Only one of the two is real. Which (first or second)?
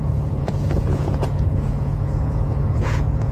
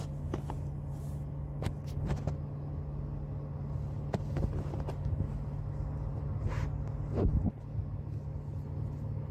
second